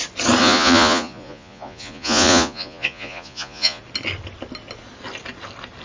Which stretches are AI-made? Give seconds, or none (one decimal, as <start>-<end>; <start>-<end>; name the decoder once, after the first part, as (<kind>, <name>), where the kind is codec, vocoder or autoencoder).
0.4-3.8 (vocoder, Vocos)

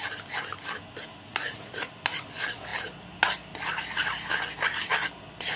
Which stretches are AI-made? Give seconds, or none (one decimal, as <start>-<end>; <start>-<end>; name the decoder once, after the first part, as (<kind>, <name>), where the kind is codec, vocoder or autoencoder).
1.3-1.9 (vocoder, Vocos)

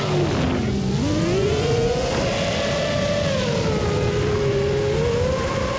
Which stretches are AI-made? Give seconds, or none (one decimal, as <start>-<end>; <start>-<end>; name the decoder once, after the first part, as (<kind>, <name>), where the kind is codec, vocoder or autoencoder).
1.4-2.1 (vocoder, Vocos)

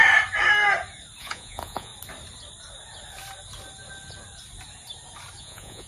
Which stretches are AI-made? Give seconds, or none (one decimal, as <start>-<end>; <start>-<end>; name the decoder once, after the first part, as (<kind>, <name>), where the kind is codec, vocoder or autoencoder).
1.2-1.9 (vocoder, Vocos); 5.4-5.9

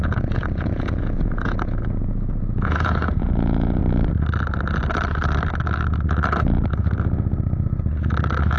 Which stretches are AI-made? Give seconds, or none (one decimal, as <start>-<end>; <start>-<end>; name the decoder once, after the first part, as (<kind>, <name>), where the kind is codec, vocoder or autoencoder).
0.0-3.8 (vocoder, Vocos)

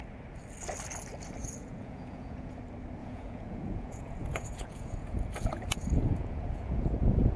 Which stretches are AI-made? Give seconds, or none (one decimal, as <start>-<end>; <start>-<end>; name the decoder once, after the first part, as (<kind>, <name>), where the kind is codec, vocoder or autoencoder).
1.4-2.6 (vocoder, Vocos); 3.0-7.4

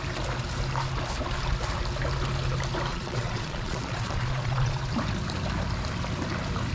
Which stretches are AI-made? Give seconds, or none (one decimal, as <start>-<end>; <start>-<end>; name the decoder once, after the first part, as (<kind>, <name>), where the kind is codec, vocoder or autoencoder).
2.9-4.9 (vocoder, Vocos)

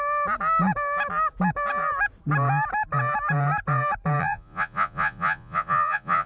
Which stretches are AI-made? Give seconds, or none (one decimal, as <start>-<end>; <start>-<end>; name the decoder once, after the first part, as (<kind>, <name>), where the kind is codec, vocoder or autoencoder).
4.2-6.3 (vocoder, Vocos)